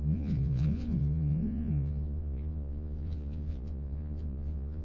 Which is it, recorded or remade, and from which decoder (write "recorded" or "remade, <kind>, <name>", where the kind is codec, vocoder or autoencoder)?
remade, vocoder, Vocos